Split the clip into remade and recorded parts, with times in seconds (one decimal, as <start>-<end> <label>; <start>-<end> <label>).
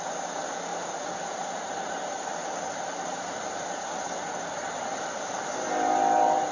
0.0-0.7 recorded; 0.7-4.5 remade; 4.5-4.9 recorded; 4.9-5.7 remade; 5.7-6.5 recorded